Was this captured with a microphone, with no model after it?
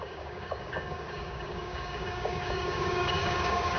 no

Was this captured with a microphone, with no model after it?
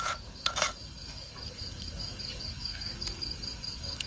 no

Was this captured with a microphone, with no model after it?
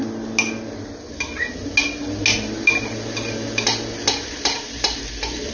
yes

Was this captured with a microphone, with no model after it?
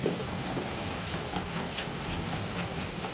no